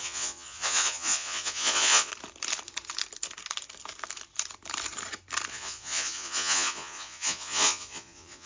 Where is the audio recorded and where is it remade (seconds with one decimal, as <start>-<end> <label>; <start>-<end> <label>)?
0.0-2.1 remade; 2.1-5.5 recorded; 5.5-8.5 remade